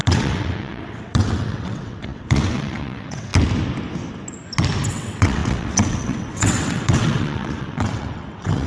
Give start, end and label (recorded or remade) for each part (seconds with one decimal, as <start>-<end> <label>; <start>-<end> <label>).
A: 0.0-3.3 remade; 3.3-4.9 recorded; 4.9-8.7 remade